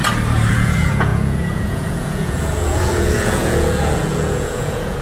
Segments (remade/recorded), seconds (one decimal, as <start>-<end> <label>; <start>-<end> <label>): 0.0-0.5 recorded; 0.5-5.0 remade